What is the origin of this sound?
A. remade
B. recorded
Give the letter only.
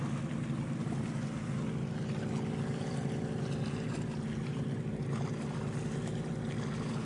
B